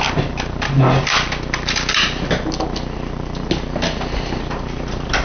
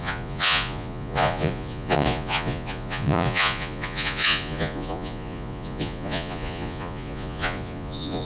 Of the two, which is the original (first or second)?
first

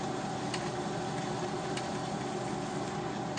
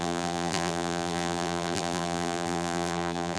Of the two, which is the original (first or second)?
first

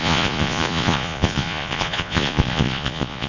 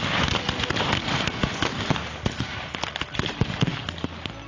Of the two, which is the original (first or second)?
second